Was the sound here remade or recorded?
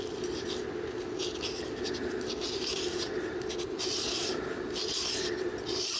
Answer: recorded